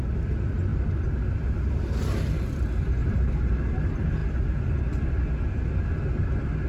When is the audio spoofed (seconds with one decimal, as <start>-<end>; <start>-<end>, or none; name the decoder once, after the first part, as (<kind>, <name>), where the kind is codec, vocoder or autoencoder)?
3.0-3.6 (vocoder, BigVGAN v2)